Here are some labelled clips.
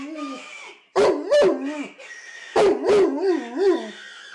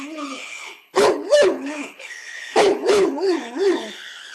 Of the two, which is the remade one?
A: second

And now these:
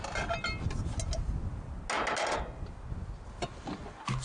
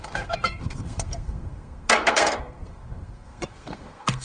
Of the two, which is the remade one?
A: second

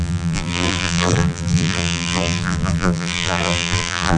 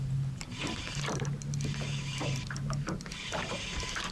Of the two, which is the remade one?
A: first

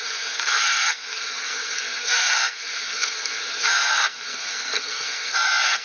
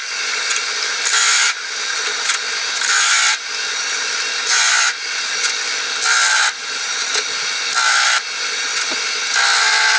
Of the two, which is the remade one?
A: first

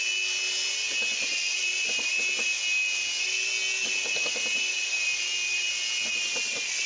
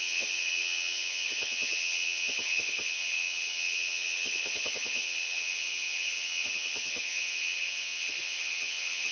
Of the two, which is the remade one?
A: second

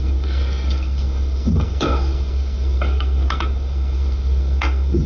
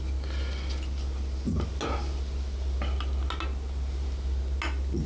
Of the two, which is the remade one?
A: first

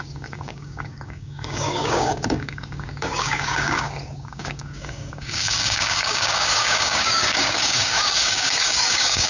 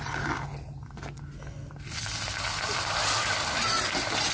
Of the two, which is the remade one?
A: first